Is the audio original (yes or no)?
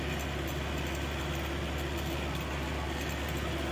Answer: yes